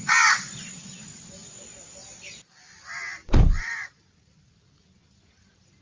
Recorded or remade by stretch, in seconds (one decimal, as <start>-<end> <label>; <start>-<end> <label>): 0.0-3.2 recorded; 3.2-4.5 remade; 4.5-5.8 recorded